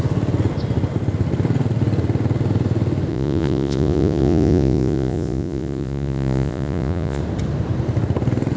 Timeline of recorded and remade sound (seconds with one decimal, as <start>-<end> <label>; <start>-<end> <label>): 0.0-3.1 recorded; 3.1-7.2 remade; 7.2-8.6 recorded